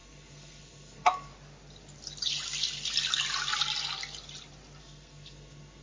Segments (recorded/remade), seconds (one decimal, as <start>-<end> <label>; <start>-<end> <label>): 0.0-1.3 remade; 1.3-4.8 recorded; 4.8-5.8 remade